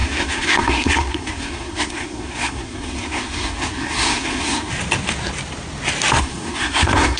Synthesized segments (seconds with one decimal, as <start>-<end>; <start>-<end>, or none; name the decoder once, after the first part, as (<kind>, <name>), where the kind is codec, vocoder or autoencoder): 0.0-4.7 (codec, SNAC); 6.2-7.2